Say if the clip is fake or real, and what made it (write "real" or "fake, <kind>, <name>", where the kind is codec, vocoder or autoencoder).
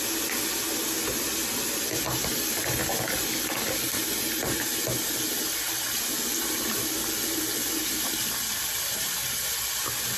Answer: real